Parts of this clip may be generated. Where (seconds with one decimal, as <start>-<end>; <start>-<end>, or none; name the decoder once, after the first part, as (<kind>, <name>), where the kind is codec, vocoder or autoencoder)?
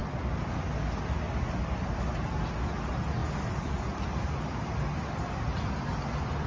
none